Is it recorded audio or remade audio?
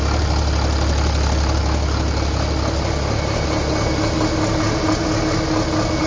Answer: recorded